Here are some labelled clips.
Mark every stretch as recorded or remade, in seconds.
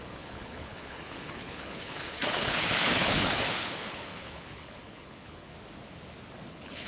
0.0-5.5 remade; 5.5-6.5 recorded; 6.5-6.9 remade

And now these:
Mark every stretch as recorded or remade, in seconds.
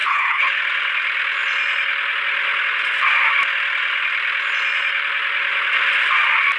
0.0-0.6 remade; 0.6-6.6 recorded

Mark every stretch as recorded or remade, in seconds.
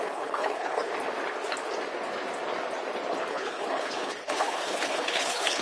0.0-0.9 remade; 0.9-3.3 recorded; 3.3-5.6 remade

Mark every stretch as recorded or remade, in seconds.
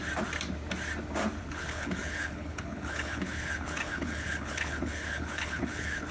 0.0-1.4 recorded; 1.4-6.1 remade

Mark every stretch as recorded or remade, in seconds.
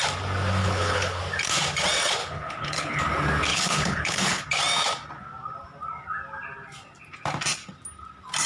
0.0-0.6 recorded; 0.6-1.2 remade; 1.2-2.2 recorded; 2.2-3.0 remade; 3.0-3.5 recorded; 3.5-4.4 remade; 4.4-8.5 recorded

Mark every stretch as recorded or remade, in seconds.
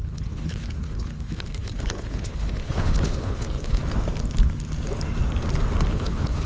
0.0-3.8 remade; 3.8-5.9 recorded; 5.9-6.5 remade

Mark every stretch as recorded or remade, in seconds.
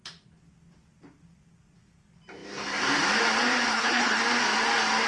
0.0-3.7 recorded; 3.7-4.2 remade; 4.2-5.1 recorded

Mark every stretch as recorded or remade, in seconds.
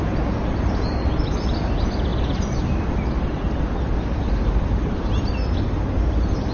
0.0-6.5 recorded